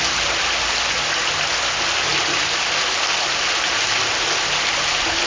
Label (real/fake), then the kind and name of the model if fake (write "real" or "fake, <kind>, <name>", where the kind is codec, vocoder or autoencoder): real